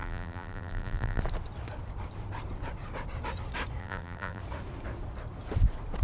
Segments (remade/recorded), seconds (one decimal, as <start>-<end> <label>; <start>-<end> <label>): 0.0-1.2 remade; 1.2-3.8 recorded; 3.8-4.4 remade; 4.4-6.0 recorded